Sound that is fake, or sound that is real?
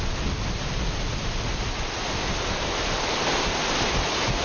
real